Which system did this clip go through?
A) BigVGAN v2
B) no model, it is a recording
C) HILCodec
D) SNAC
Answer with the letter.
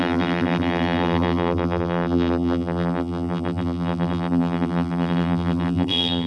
A